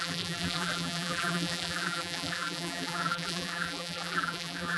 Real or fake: fake